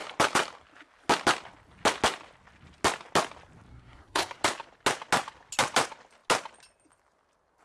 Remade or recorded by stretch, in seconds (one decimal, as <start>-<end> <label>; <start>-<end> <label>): 0.0-3.7 recorded; 3.7-4.4 remade; 4.4-7.6 recorded